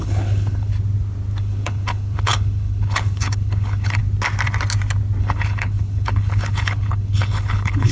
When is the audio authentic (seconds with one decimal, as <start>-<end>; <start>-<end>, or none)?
0.7-1.4; 4.0-5.2